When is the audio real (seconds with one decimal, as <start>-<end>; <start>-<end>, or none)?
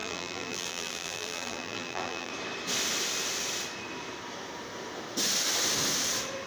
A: 2.3-6.5